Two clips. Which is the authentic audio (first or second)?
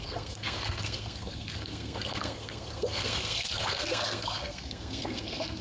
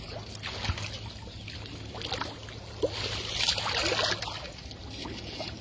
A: second